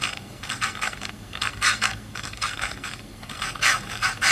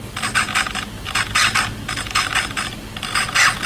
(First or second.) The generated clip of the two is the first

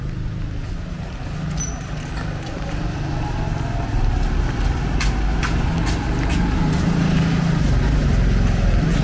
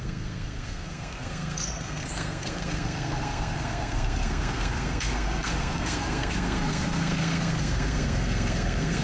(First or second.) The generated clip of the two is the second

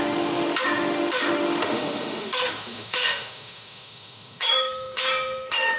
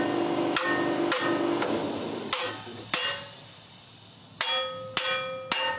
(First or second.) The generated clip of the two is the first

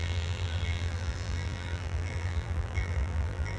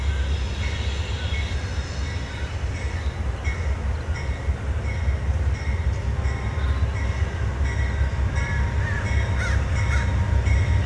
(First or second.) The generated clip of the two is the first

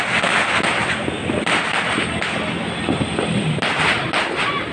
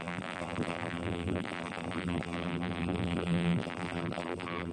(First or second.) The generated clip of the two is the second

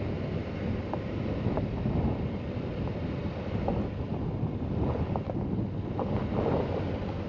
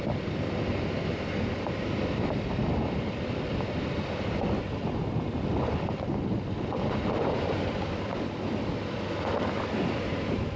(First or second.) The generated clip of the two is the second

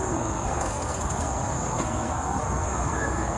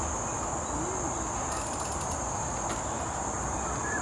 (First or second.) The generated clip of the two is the first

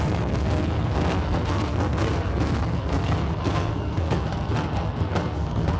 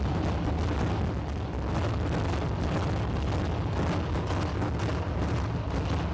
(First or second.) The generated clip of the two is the first